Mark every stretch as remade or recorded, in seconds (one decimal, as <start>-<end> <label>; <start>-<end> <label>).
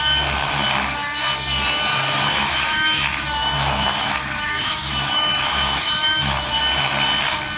0.0-1.9 recorded; 1.9-6.5 remade; 6.5-7.6 recorded